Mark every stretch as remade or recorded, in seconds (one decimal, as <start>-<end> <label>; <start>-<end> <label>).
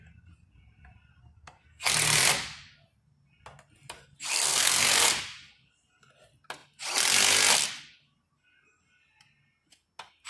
0.0-1.2 recorded; 1.2-1.9 remade; 1.9-4.3 recorded; 4.3-4.9 remade; 4.9-10.3 recorded